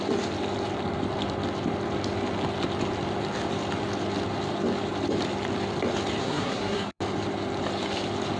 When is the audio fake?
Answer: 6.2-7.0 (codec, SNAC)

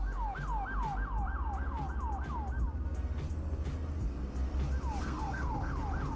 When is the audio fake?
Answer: 5.0-5.7 (codec, SNAC)